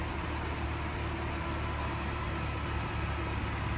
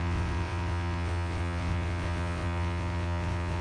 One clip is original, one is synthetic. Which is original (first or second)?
first